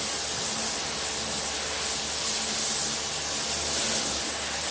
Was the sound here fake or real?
real